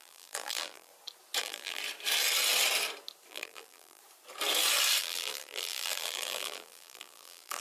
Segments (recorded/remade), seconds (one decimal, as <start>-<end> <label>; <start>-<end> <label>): 0.0-0.9 remade; 0.9-1.4 recorded; 1.4-1.8 remade; 1.8-3.3 recorded; 3.3-4.0 remade; 4.0-5.0 recorded; 5.0-7.6 remade